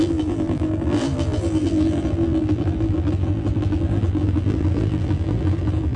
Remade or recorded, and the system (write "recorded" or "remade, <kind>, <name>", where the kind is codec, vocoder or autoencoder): remade, vocoder, BigVGAN v2